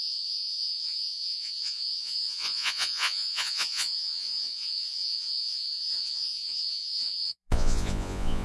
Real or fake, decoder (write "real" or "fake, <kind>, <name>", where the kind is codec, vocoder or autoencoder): fake, vocoder, Vocos